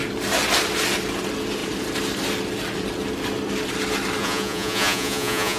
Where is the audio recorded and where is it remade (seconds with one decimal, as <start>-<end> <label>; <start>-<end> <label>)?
0.0-4.2 recorded; 4.2-5.6 remade